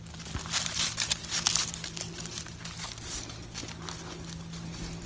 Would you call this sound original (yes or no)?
yes